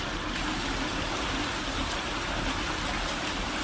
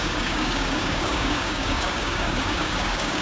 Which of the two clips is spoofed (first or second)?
second